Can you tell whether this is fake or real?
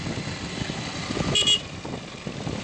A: real